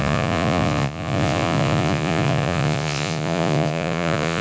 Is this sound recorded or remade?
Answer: remade